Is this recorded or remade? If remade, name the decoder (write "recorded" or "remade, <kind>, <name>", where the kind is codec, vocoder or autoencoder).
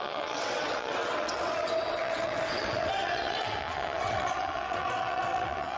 remade, vocoder, WaveNeXt